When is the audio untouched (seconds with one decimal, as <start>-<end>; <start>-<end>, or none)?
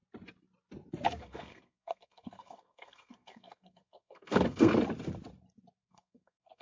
0.0-1.2; 4.7-5.8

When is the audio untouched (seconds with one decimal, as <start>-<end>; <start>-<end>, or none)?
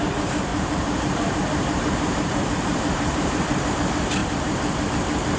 0.0-0.5; 3.7-4.2; 4.9-5.4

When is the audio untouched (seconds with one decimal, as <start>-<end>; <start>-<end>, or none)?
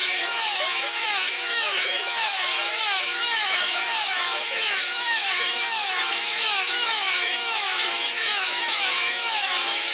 none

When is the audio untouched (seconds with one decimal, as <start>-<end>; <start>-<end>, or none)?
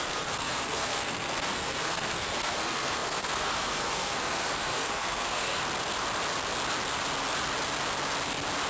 5.6-8.7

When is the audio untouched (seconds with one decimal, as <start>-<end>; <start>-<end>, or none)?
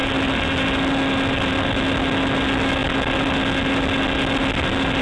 0.0-5.0